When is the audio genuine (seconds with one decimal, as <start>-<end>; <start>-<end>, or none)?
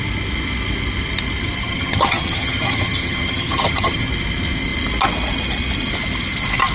0.0-1.6; 4.1-6.7